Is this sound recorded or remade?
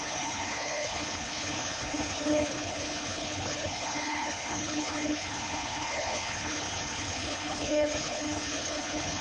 remade